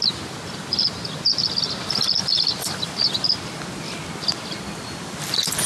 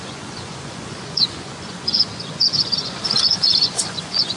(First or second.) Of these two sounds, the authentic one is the first